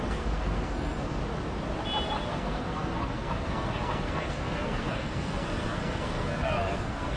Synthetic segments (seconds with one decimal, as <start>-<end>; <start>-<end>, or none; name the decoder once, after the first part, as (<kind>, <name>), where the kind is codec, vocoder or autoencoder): 0.0-1.2 (codec, SNAC); 2.3-7.2